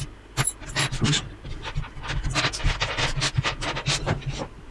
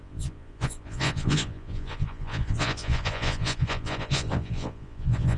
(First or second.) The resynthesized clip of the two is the second